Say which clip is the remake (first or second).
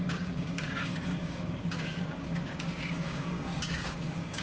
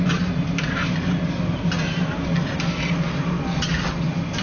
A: first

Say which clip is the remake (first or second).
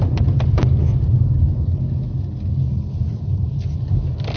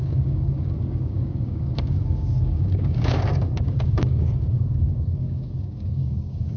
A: second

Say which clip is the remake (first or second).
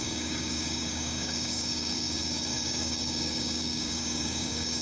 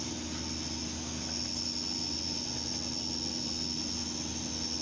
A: first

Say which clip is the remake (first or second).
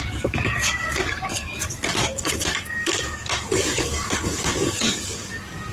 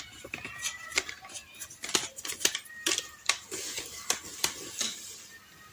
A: first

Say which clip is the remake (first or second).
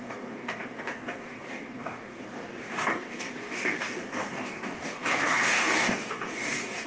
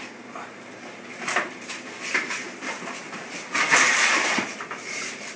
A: first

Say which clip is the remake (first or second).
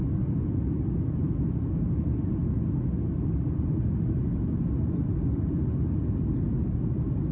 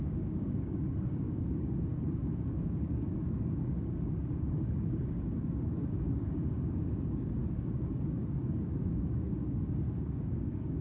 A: second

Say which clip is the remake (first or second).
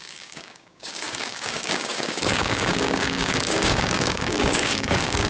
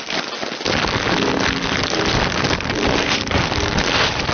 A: first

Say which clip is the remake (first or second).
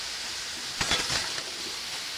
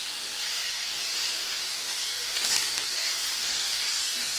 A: second